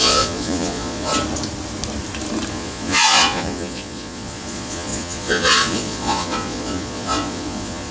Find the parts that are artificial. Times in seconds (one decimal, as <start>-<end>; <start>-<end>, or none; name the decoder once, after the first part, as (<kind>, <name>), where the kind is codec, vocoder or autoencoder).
0.0-1.1 (vocoder, Vocos); 2.5-7.9